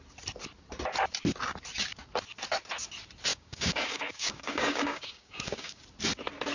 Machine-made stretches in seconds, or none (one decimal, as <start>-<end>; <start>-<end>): 3.3-5.8